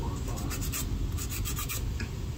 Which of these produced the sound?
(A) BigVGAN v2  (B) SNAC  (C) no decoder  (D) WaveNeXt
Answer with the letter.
C